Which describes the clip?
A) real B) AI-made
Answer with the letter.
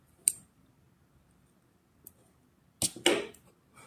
A